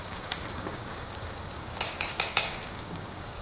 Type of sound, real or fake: fake